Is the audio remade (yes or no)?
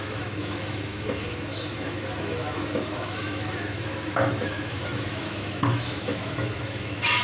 yes